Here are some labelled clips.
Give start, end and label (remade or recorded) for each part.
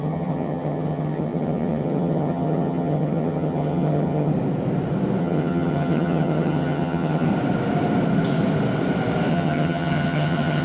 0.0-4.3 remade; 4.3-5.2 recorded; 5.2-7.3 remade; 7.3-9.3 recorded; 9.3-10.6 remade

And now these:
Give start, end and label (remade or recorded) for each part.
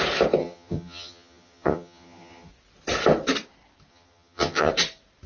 0.0-0.4 recorded; 0.4-2.5 remade; 2.5-3.9 recorded; 3.9-4.7 remade; 4.7-5.3 recorded